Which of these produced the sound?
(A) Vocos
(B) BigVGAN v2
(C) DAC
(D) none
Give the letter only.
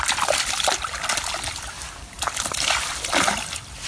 D